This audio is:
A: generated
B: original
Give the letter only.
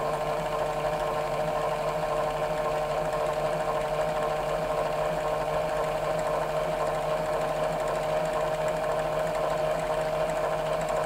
B